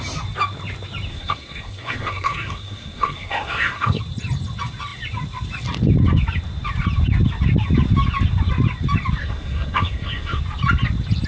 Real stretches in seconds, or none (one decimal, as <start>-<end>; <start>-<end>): 0.0-1.1; 4.0-9.2; 10.4-11.3